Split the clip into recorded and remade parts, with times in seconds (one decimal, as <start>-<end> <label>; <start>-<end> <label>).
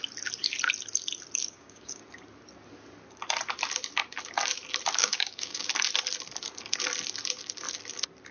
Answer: 0.0-1.4 recorded; 1.4-2.0 remade; 2.0-5.0 recorded; 5.0-5.7 remade; 5.7-8.3 recorded